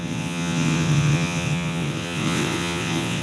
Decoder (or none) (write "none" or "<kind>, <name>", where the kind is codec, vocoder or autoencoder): vocoder, WaveNeXt